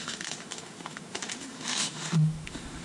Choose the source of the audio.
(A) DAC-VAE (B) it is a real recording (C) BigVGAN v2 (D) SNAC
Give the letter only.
A